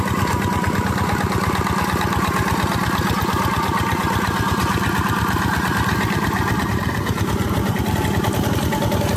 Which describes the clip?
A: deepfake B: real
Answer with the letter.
B